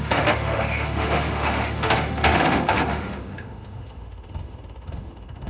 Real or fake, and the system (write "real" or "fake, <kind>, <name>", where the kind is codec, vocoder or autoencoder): fake, autoencoder, DAC-VAE